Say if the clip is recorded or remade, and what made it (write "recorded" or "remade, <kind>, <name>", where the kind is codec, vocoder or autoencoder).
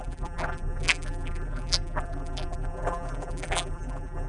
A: remade, vocoder, BigVGAN v2